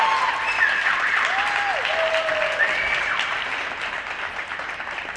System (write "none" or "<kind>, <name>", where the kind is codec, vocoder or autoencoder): none